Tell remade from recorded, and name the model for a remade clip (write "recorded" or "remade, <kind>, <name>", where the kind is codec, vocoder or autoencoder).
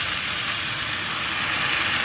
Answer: recorded